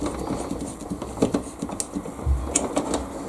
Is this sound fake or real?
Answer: real